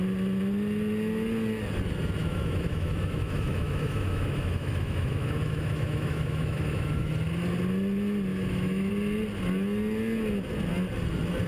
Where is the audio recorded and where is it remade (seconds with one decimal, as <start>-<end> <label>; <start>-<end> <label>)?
0.0-2.2 recorded; 2.2-7.1 remade; 7.1-8.3 recorded; 8.3-8.9 remade; 8.9-11.5 recorded